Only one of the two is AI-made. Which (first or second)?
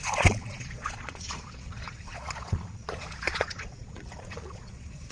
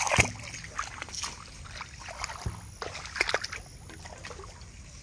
first